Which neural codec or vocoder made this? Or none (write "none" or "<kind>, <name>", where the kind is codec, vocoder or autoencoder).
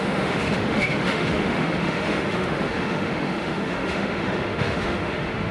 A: autoencoder, DAC-VAE